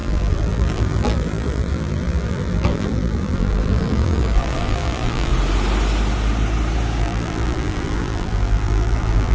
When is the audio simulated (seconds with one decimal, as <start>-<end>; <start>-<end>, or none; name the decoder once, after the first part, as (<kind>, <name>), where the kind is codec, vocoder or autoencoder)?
0.0-5.3 (vocoder, BigVGAN v2); 7.0-9.3